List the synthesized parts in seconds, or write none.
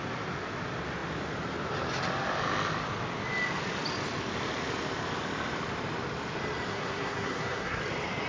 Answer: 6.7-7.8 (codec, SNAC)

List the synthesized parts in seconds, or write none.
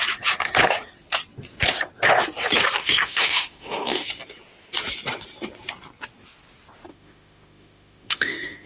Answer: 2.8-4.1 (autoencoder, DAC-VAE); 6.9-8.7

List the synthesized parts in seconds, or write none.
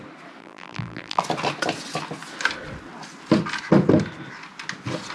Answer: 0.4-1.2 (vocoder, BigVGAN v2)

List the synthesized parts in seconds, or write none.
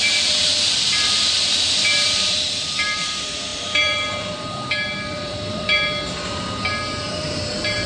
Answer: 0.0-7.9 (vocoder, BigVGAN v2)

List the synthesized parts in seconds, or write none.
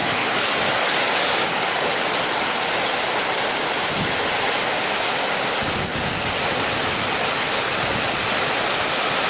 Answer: 0.0-1.9 (codec, DAC)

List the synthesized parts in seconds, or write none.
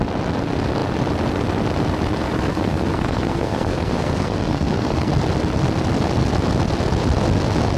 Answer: 2.5-5.1 (codec, SNAC)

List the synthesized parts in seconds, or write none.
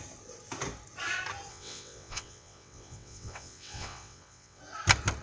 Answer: 1.5-4.6 (vocoder, WaveNeXt)